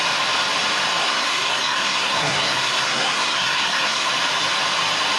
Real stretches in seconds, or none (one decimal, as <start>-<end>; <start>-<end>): 0.0-1.0; 4.1-5.2